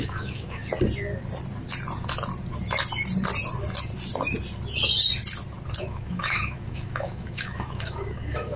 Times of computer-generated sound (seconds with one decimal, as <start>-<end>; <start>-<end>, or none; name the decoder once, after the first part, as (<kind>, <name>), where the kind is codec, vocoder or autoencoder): 0.0-0.6 (autoencoder, DAC-VAE); 5.8-8.6